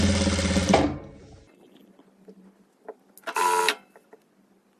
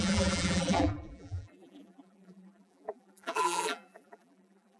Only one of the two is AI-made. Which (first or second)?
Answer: second